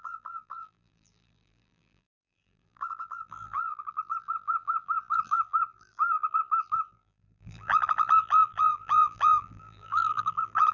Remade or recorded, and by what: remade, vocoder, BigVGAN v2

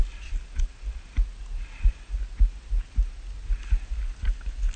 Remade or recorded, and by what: recorded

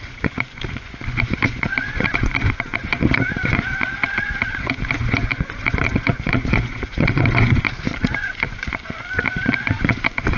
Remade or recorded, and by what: remade, vocoder, Vocos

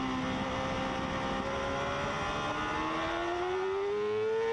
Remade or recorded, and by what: recorded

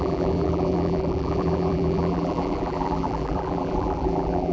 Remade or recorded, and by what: remade, vocoder, BigVGAN v2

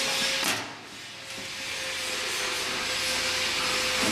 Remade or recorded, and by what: recorded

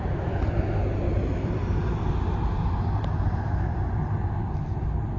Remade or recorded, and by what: recorded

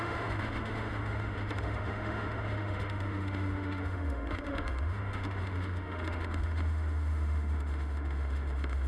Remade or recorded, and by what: remade, autoencoder, DAC-VAE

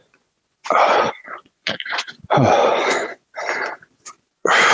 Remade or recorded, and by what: remade, vocoder, Vocos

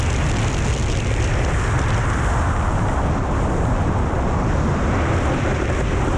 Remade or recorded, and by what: recorded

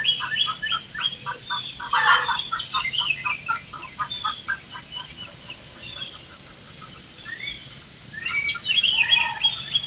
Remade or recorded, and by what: remade, vocoder, BigVGAN v2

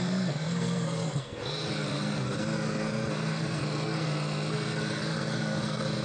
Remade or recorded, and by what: remade, codec, SNAC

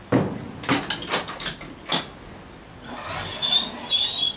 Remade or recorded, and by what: recorded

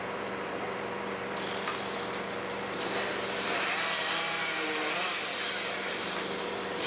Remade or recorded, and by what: remade, vocoder, BigVGAN v2